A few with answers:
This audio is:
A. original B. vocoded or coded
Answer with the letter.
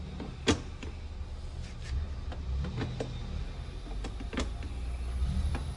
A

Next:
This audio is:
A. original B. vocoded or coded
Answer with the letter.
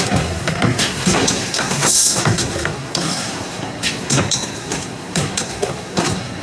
B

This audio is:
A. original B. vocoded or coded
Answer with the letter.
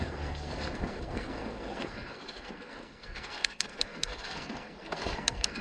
B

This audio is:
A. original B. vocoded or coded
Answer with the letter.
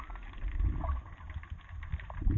A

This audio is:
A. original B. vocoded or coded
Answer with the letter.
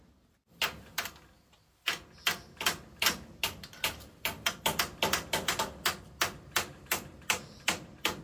A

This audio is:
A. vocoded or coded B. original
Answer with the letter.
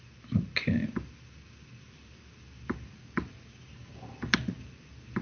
B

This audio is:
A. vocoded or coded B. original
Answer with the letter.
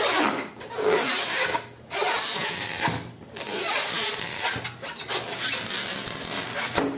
B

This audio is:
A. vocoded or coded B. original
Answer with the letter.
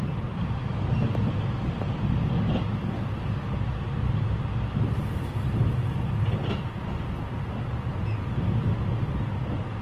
B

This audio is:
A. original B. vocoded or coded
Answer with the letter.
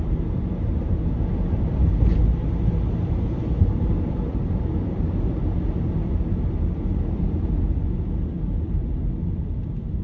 A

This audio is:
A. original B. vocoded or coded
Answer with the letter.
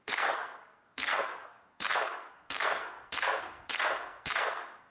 B